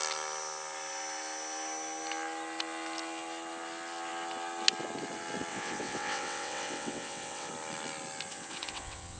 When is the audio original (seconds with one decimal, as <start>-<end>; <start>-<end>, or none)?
0.0-5.5; 7.5-8.3